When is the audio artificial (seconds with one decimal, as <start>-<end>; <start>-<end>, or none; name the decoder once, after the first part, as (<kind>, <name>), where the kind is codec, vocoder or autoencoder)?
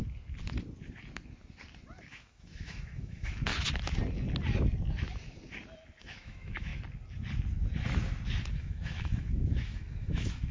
2.1-3.5 (autoencoder, DAC-VAE); 6.0-6.7; 8.5-10.5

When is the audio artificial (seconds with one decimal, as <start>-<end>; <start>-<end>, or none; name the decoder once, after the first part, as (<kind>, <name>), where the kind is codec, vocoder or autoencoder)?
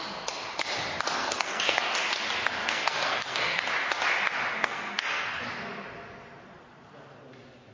1.2-1.8 (codec, SNAC); 2.6-3.6; 4.5-5.4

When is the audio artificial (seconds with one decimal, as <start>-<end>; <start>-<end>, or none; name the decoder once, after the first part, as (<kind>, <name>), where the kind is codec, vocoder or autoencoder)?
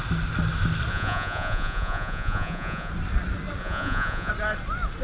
0.9-2.9 (vocoder, Vocos); 3.6-4.3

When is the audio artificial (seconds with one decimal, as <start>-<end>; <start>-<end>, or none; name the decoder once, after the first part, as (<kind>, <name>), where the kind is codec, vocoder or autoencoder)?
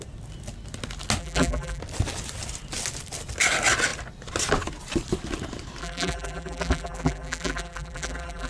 1.2-1.8 (vocoder, BigVGAN v2); 5.8-8.5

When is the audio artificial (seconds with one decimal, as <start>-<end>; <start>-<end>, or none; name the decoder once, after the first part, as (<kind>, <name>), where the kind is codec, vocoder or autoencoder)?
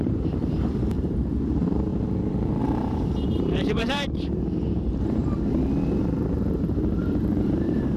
0.0-1.9 (vocoder, BigVGAN v2); 2.6-5.2; 6.3-8.0